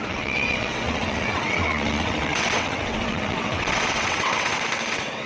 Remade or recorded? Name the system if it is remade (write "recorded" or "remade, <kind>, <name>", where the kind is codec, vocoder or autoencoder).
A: remade, vocoder, WaveNeXt